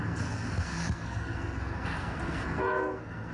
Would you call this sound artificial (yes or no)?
yes